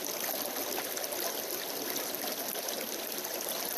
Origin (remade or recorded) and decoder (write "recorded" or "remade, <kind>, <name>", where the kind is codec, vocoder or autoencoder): recorded